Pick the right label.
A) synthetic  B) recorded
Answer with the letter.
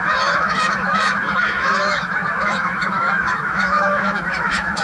A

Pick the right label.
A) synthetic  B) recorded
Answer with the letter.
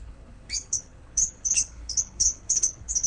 A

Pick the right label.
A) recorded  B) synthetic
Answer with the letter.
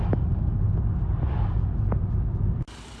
A